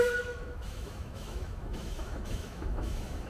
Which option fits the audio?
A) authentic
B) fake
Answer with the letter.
B